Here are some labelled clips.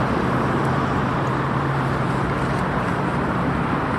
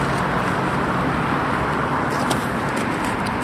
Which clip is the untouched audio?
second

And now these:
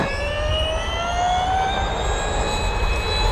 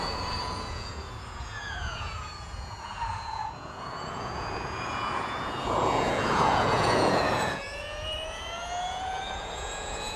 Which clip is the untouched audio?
first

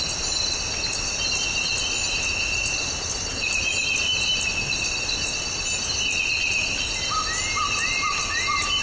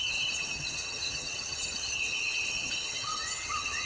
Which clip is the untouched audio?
first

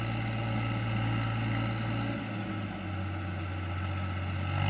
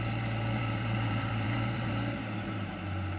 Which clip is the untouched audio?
first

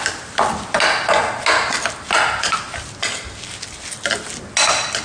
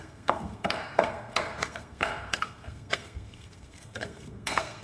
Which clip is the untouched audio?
first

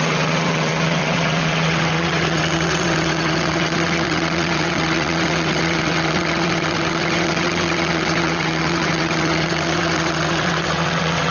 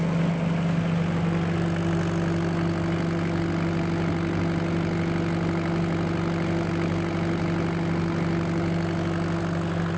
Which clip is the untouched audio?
second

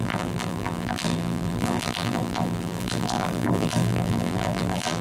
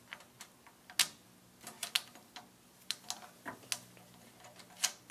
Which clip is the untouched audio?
second